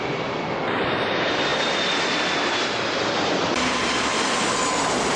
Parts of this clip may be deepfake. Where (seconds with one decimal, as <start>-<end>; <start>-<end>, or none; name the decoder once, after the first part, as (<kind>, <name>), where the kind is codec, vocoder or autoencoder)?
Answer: none